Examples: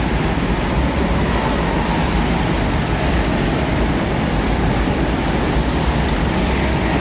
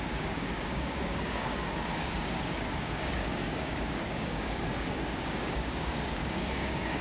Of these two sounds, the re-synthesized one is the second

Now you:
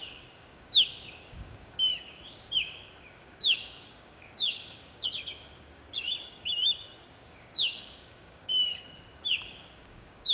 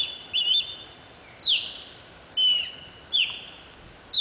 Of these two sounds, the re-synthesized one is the first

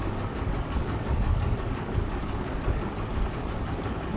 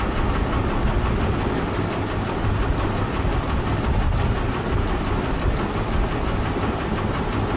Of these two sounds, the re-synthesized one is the first